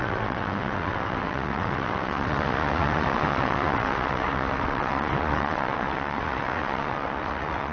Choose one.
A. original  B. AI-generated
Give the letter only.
B